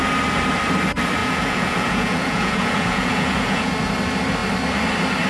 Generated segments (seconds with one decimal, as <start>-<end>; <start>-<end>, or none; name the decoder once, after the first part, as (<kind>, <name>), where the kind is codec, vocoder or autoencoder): 1.2-3.7 (vocoder, Vocos)